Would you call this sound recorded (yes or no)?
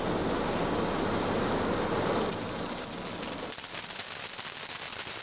yes